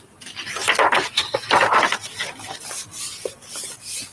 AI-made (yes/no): no